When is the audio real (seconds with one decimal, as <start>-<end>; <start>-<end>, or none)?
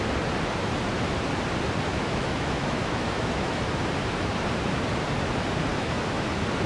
0.0-1.9; 3.8-5.7; 6.3-6.7